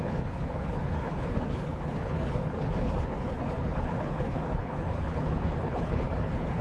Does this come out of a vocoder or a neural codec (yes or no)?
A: yes